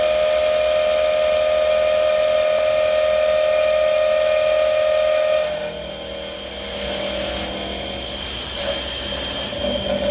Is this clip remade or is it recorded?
recorded